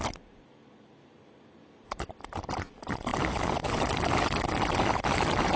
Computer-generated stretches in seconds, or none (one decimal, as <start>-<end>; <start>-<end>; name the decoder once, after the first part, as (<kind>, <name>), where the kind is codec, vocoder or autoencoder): none